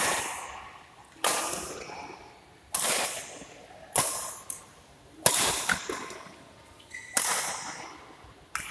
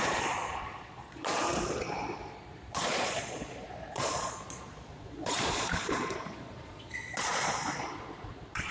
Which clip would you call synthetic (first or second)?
second